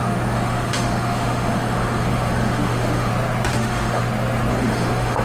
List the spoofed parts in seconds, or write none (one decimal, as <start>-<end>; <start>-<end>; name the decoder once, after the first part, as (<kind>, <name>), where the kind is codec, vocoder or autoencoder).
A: 0.0-3.1 (autoencoder, DAC-VAE); 3.5-4.0; 4.5-5.2